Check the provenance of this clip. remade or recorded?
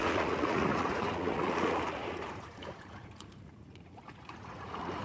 remade